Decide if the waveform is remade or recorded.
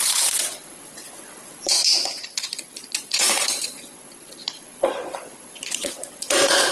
remade